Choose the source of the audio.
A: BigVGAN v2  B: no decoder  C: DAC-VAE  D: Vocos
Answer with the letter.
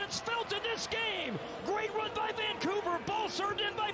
B